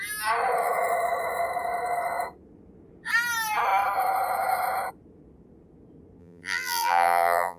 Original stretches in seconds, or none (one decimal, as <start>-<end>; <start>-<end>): 0.0-6.2